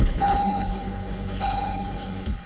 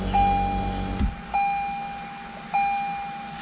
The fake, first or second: first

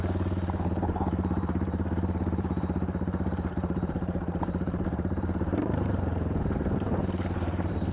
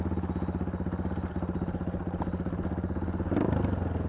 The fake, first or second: first